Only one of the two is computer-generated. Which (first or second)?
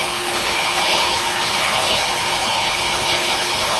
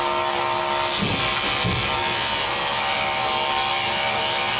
first